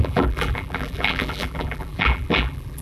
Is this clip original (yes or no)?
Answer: no